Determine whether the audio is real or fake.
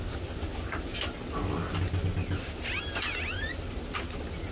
real